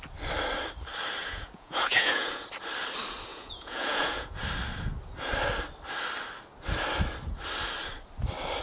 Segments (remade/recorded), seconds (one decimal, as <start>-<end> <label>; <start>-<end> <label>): 0.0-1.2 recorded; 1.2-2.5 remade; 2.5-3.3 recorded; 3.3-4.4 remade; 4.4-8.6 recorded